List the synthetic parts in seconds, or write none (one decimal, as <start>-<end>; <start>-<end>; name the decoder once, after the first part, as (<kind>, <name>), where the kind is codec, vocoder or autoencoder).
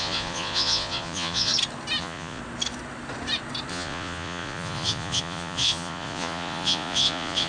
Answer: 0.0-1.5 (vocoder, Vocos); 2.0-2.4; 3.7-7.5